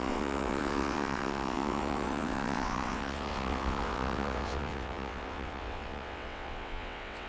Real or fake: fake